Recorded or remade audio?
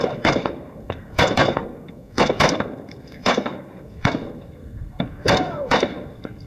remade